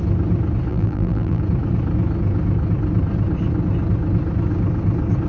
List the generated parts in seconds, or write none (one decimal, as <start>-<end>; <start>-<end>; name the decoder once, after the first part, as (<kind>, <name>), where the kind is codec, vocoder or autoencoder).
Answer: 0.7-1.4 (vocoder, BigVGAN v2)